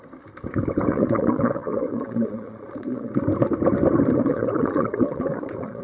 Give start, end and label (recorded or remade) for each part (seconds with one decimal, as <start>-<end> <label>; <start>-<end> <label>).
0.0-0.9 recorded; 0.9-3.1 remade; 3.1-4.2 recorded; 4.2-5.8 remade